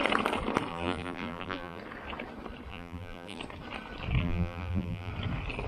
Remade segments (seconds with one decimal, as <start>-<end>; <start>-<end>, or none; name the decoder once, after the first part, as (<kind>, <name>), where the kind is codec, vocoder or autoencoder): 0.7-1.8 (vocoder, BigVGAN v2); 2.7-3.4; 4.2-5.1